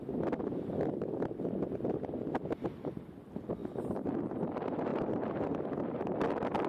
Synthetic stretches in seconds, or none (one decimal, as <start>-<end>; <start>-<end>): none